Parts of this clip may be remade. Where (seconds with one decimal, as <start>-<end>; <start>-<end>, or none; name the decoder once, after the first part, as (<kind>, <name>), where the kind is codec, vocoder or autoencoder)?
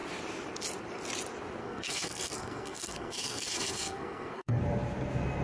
1.6-4.6 (codec, SNAC)